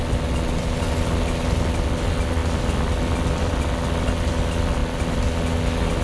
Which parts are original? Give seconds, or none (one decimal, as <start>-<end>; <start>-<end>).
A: 0.0-6.0